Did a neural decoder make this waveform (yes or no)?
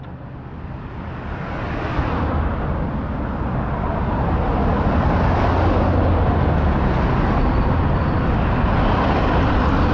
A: no